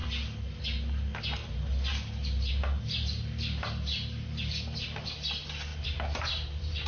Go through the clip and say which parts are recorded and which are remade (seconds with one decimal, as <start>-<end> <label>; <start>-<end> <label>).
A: 0.0-6.9 recorded